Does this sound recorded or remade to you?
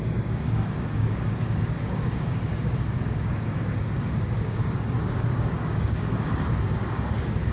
remade